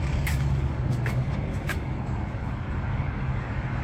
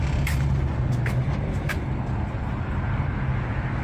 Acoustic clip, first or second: second